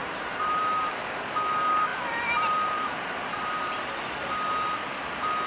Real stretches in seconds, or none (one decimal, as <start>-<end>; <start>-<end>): 1.0-1.9; 4.3-5.5